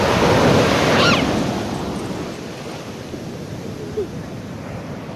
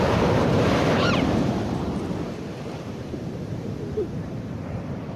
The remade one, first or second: second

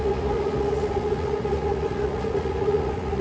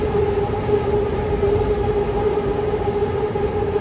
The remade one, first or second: first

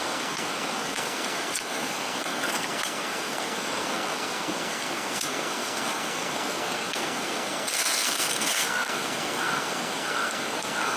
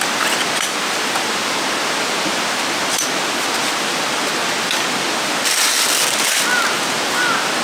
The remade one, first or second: first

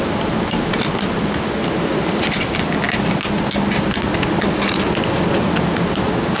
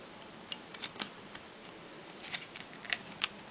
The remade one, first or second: second